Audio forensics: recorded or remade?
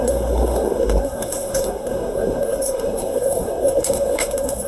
remade